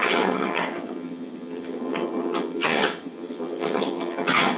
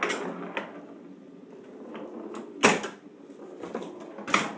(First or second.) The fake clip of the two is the first